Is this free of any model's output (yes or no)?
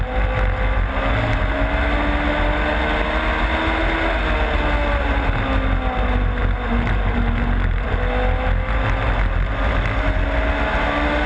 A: yes